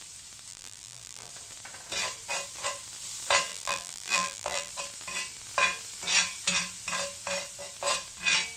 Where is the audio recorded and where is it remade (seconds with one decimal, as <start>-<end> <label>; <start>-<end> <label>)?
0.0-0.5 recorded; 0.5-1.3 remade; 1.3-3.5 recorded; 3.5-4.7 remade; 4.7-8.6 recorded